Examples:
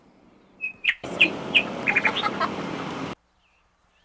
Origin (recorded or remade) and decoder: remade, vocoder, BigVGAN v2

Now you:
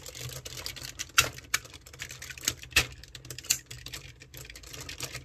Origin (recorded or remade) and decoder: recorded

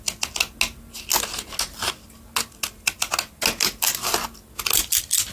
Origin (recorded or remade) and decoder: recorded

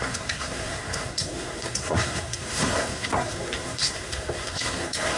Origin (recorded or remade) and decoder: remade, codec, SNAC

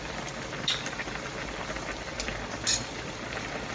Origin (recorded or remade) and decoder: remade, vocoder, BigVGAN v2